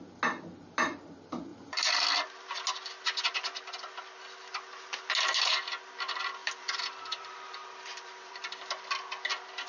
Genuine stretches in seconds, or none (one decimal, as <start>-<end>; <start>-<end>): 0.0-1.5; 2.0-6.4; 8.7-9.7